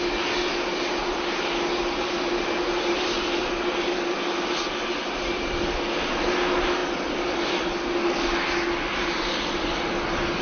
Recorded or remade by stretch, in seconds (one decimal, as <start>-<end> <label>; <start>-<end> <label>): 0.0-10.4 recorded